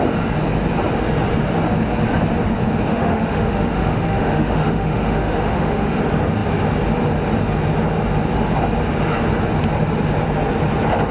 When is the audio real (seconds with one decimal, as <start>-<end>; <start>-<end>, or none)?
0.0-2.9; 6.0-11.1